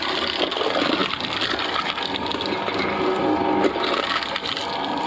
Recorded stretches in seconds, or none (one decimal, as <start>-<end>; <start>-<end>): 0.0-5.1